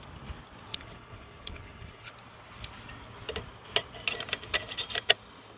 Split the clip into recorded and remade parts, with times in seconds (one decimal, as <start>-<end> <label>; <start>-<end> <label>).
0.0-0.7 recorded; 0.7-2.1 remade; 2.1-5.6 recorded